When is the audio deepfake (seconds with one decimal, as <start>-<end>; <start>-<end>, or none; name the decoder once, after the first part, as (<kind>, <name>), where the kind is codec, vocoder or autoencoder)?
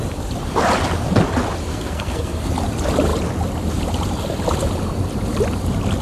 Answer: 1.7-2.5 (codec, SNAC)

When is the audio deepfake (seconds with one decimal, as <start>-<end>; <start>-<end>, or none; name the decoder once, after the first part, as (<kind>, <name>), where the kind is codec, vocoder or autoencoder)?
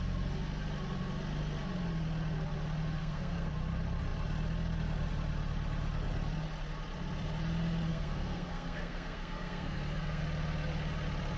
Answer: 3.0-3.5 (codec, SNAC); 7.9-10.2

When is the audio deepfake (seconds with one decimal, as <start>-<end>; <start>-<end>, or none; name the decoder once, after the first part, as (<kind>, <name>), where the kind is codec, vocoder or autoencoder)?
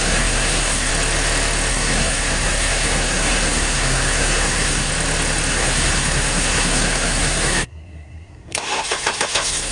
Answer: 0.0-0.9 (codec, SNAC); 1.7-4.9; 5.5-9.7